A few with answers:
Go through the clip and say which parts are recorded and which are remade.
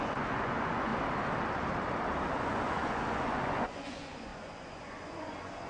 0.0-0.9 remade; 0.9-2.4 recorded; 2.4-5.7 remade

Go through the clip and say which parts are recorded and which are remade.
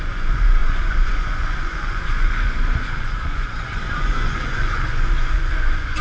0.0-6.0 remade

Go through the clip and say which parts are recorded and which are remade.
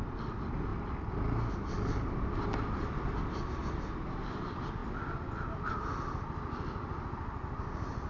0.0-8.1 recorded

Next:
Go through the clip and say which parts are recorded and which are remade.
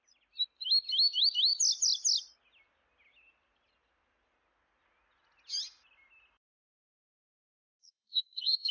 0.0-7.0 recorded; 7.0-8.7 remade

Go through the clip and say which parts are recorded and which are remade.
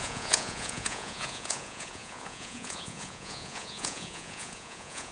0.0-5.1 remade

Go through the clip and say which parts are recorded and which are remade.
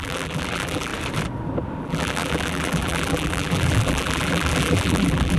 0.0-0.9 remade; 0.9-1.8 recorded; 1.8-5.4 remade